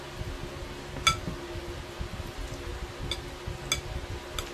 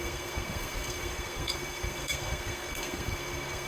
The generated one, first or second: second